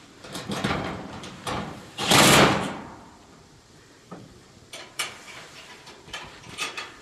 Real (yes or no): no